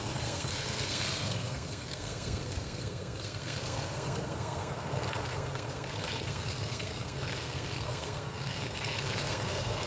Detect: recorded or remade remade